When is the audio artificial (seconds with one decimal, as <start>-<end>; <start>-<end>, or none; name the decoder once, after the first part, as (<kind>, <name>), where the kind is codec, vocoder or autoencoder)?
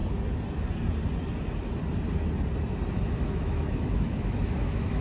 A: 3.0-5.0 (autoencoder, DAC-VAE)